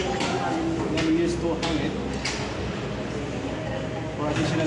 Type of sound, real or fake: real